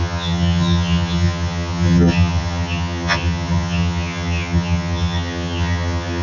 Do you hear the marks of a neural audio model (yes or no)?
yes